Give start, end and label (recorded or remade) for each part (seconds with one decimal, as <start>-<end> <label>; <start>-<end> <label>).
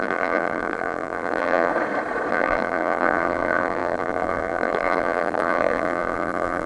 0.0-1.7 remade; 1.7-2.3 recorded; 2.3-6.7 remade